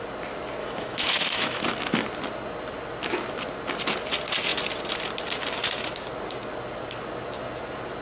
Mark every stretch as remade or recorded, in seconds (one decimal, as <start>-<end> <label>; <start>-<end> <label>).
0.0-0.6 recorded; 0.6-1.6 remade; 1.6-8.0 recorded